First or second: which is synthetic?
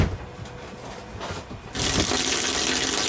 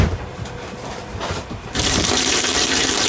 second